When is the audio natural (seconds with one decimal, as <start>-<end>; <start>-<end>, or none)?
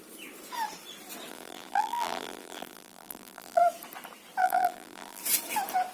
0.0-1.3; 3.6-4.4; 5.2-5.9